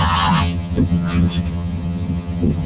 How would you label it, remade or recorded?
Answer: remade